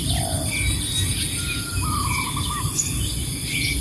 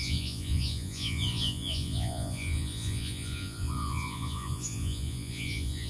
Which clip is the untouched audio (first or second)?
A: first